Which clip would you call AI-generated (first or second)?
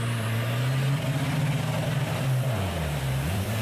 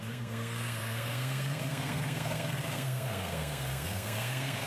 second